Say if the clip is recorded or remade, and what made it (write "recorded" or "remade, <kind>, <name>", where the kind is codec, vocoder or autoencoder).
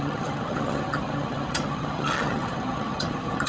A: remade, vocoder, HiFi-GAN